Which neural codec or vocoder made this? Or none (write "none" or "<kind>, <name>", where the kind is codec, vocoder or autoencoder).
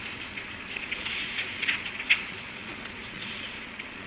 vocoder, Vocos